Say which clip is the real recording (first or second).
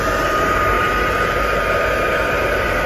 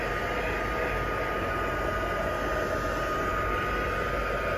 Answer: second